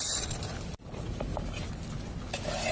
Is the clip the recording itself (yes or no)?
yes